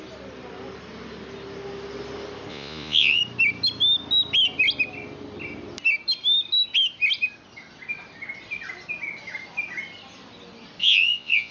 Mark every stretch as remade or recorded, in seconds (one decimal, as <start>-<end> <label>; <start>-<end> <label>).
0.0-2.5 recorded; 2.5-3.2 remade; 3.2-10.8 recorded; 10.8-11.5 remade